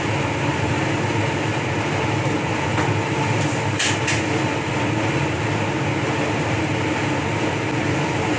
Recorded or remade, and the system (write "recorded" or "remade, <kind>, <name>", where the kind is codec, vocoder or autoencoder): recorded